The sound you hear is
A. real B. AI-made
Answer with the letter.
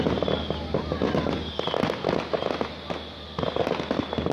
A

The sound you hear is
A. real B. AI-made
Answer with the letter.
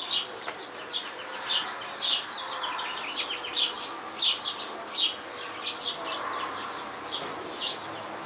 A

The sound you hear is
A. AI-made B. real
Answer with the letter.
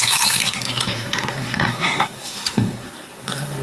A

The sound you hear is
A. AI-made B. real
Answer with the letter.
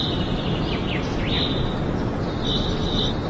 B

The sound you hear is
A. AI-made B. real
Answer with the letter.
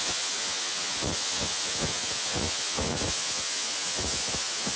A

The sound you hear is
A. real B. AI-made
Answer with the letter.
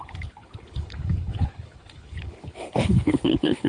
B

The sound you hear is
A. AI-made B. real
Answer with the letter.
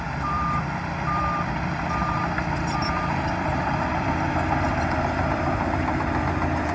A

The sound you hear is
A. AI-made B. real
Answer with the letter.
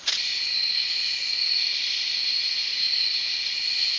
B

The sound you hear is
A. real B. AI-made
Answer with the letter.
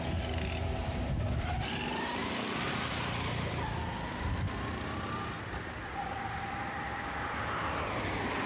A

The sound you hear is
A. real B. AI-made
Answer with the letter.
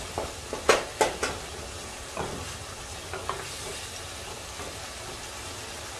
A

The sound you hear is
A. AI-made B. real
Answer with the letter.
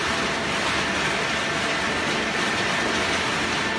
B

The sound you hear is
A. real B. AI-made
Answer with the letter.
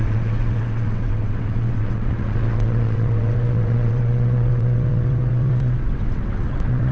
B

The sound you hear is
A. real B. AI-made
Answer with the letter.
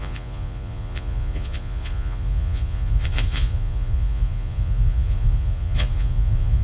B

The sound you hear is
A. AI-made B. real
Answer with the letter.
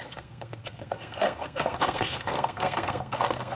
A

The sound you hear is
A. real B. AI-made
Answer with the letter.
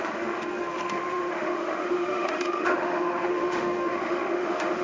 B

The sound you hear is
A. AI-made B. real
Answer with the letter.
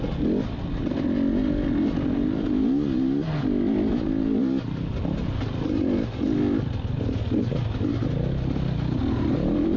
B